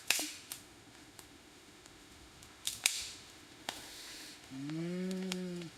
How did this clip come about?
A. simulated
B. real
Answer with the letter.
A